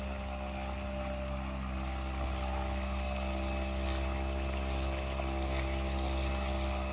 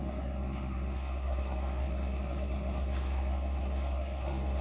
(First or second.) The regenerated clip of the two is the second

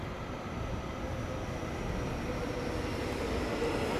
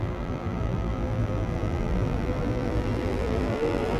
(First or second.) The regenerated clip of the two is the second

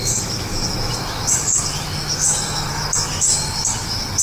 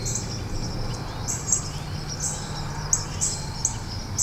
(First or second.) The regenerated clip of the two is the first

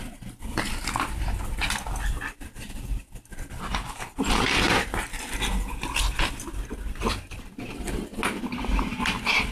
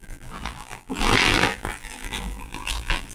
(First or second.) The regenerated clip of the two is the second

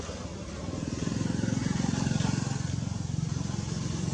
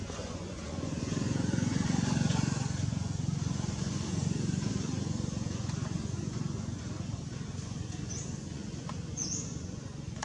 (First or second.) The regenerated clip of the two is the second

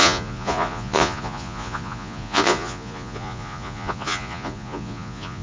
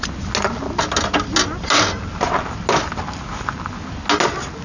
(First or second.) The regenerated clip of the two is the first